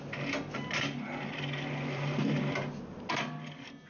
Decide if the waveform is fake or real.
real